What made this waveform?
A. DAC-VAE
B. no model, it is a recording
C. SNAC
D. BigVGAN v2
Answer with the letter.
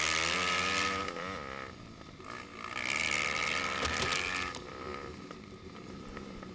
B